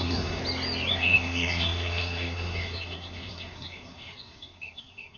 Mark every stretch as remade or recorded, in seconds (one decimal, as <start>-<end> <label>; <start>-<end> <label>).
0.0-0.4 remade; 0.4-0.9 recorded; 0.9-5.2 remade